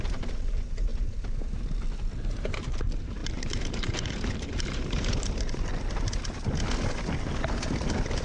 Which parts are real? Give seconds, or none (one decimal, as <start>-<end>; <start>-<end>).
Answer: 0.9-2.6; 5.7-8.2